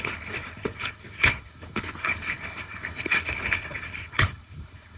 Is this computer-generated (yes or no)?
yes